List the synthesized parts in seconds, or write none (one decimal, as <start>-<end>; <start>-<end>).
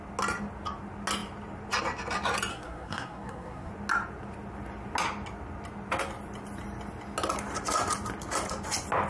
2.5-3.7